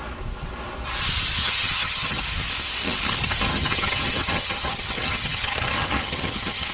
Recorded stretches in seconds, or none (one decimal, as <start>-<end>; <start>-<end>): 0.0-1.4; 2.2-3.5